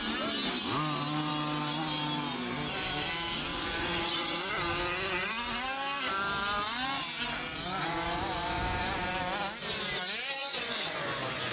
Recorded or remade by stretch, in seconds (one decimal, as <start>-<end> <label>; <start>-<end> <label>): 0.0-3.5 recorded; 3.5-4.5 remade; 4.5-7.8 recorded; 7.8-9.1 remade; 9.1-10.4 recorded; 10.4-11.5 remade